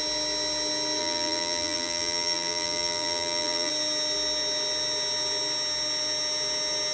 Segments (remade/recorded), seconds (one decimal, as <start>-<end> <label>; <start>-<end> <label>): 0.0-1.0 recorded; 1.0-3.7 remade; 3.7-6.9 recorded